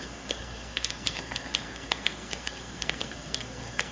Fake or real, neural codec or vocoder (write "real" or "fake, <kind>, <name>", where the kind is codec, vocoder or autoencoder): fake, codec, SNAC